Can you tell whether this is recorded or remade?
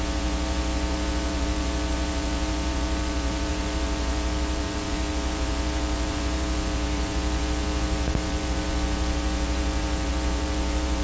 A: remade